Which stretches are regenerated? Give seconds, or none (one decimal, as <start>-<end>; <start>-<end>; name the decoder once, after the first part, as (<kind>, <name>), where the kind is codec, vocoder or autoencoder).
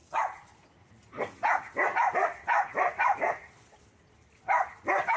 0.0-0.9 (vocoder, BigVGAN v2); 1.9-3.8